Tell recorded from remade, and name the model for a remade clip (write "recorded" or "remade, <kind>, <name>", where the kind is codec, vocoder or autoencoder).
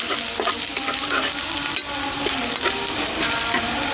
recorded